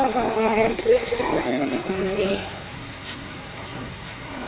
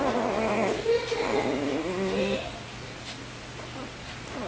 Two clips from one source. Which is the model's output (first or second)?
first